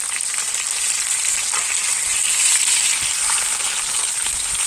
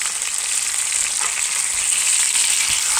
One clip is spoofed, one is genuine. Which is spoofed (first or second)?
first